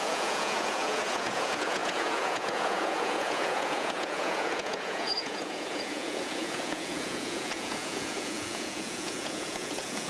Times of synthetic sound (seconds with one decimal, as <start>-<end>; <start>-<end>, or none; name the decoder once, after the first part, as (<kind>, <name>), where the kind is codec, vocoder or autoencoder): 0.0-10.1 (vocoder, Vocos)